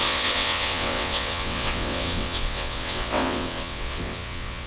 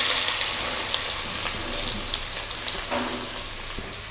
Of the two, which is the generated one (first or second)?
first